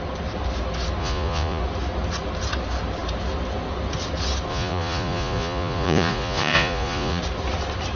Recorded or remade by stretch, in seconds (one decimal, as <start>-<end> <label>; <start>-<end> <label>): 0.0-1.0 recorded; 1.0-1.6 remade; 1.6-4.5 recorded; 4.5-7.2 remade; 7.2-8.0 recorded